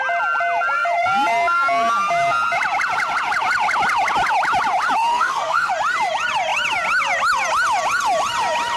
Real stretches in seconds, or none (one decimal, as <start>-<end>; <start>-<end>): 0.0-5.1; 5.7-8.8